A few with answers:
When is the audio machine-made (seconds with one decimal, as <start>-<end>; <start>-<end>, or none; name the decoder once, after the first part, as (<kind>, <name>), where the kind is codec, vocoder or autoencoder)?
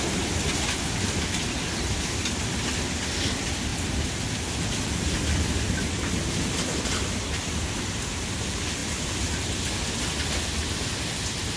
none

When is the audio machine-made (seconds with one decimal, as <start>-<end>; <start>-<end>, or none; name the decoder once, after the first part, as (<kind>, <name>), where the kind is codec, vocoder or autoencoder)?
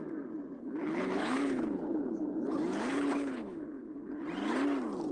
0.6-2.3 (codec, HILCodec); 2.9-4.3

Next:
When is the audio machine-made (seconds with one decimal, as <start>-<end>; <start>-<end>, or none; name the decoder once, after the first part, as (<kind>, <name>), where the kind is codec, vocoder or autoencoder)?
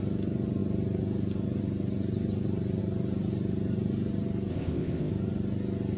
4.5-5.1 (codec, ZipCodec)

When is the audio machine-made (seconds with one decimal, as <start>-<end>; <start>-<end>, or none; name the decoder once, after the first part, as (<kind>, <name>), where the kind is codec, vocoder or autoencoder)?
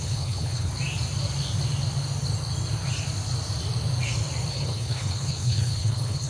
0.0-0.7 (codec, HILCodec); 4.5-6.3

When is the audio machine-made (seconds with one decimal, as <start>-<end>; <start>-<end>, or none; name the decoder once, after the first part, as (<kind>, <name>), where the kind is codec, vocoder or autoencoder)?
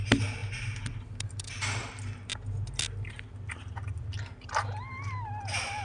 0.0-5.8 (vocoder, BigVGAN v2)